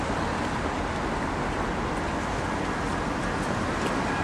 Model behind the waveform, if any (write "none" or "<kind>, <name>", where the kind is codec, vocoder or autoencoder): none